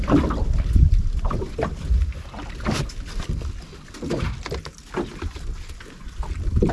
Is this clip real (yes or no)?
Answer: yes